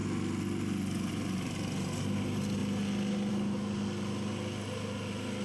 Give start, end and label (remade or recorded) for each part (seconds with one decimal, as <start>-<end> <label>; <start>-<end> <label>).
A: 0.0-5.4 recorded